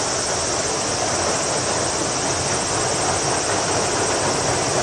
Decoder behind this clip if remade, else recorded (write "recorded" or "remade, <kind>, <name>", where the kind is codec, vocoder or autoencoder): recorded